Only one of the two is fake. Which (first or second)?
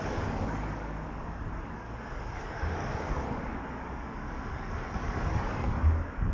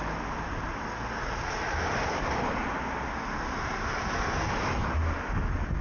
first